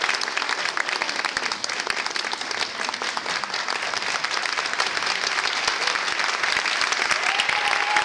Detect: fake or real real